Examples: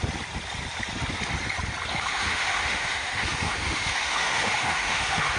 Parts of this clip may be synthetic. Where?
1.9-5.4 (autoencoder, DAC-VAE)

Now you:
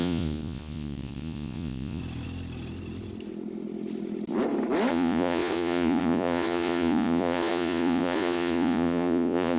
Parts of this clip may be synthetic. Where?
0.0-2.0 (vocoder, Vocos); 4.9-9.6